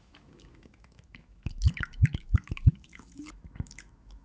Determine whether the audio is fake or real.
fake